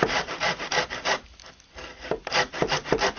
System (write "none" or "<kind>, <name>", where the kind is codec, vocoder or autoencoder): none